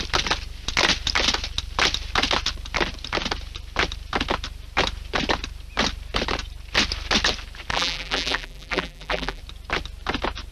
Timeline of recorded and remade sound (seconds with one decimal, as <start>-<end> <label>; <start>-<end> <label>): 0.0-7.7 recorded; 7.7-9.4 remade; 9.4-10.5 recorded